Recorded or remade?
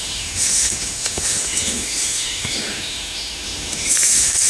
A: remade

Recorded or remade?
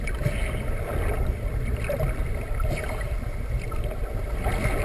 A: recorded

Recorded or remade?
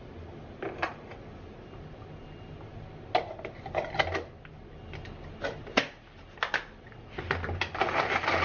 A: recorded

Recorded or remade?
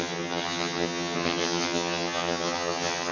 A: remade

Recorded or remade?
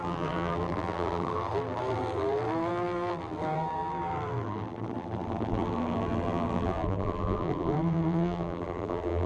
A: remade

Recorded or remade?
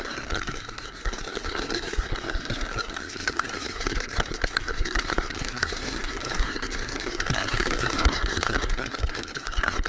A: remade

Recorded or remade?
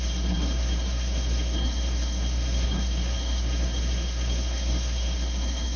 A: remade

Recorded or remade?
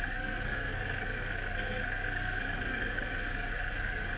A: remade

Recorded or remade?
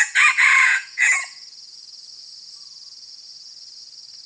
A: remade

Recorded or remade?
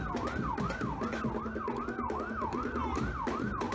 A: recorded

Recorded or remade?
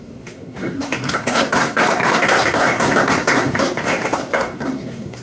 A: remade